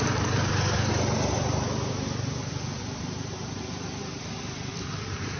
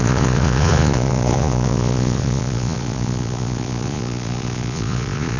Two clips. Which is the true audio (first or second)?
first